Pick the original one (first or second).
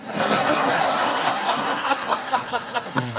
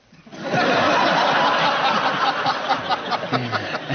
second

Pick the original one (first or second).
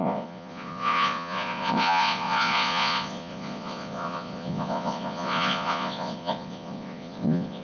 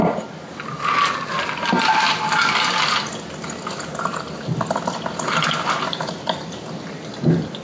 second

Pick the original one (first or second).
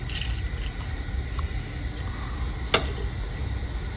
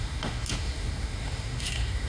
first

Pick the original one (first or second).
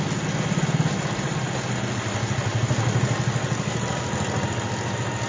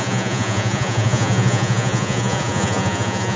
first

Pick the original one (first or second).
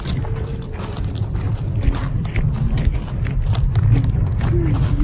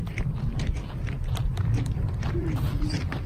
first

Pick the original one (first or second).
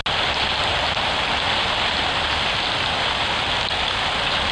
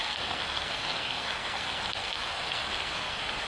first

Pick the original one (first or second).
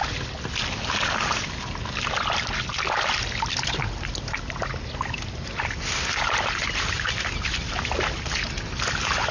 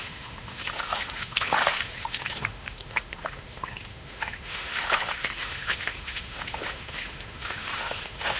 first